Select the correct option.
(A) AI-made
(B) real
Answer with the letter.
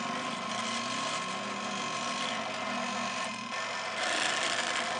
B